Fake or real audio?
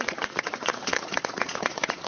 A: fake